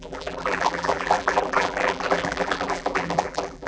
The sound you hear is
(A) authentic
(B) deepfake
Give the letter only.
B